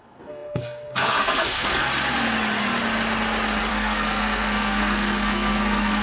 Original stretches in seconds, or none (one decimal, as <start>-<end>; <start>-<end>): 1.8-3.7